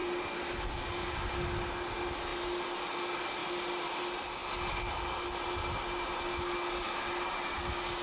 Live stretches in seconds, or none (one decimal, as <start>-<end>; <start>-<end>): 0.0-8.0